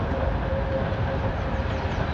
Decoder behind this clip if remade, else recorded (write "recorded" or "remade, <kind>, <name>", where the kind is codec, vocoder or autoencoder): recorded